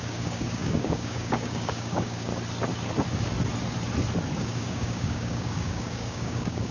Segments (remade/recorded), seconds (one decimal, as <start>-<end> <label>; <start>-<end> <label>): 0.0-2.3 remade; 2.3-4.4 recorded; 4.4-6.7 remade